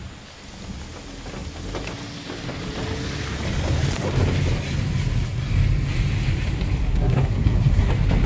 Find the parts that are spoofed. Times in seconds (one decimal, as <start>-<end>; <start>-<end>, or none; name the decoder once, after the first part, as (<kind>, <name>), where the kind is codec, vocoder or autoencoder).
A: 6.8-7.9 (codec, SNAC)